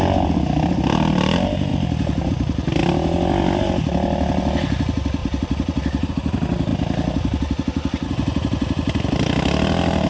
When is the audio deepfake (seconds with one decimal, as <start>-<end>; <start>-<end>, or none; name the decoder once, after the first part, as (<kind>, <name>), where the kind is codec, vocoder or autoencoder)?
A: 2.8-3.6 (vocoder, BigVGAN v2); 5.2-6.1